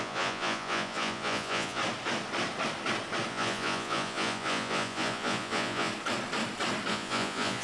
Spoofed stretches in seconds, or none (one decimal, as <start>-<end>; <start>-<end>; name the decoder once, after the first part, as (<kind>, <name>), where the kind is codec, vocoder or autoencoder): 0.0-1.8 (vocoder, Vocos); 3.3-5.9; 6.9-7.6